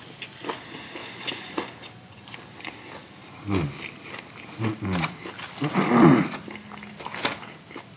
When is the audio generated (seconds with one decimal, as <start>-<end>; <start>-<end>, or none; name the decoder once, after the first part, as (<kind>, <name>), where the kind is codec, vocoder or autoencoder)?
1.0-2.4 (vocoder, Vocos)